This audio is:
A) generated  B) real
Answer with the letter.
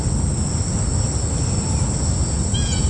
B